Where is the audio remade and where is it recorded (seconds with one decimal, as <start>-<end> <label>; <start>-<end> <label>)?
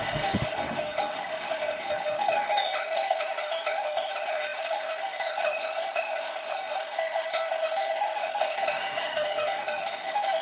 0.0-10.4 remade